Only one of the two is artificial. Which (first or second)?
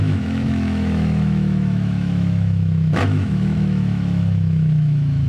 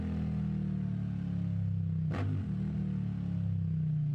first